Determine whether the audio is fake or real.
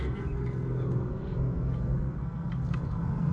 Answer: fake